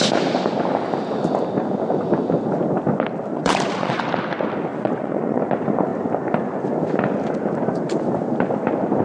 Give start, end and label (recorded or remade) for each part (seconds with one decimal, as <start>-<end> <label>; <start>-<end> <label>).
0.0-3.3 recorded; 3.3-4.0 remade; 4.0-4.7 recorded; 4.7-5.4 remade; 5.4-9.0 recorded